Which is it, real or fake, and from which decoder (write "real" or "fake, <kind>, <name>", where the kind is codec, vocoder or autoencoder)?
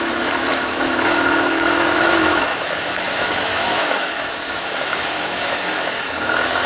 fake, autoencoder, DAC-VAE